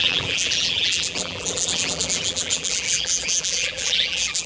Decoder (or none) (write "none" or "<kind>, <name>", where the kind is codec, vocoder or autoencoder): vocoder, BigVGAN v2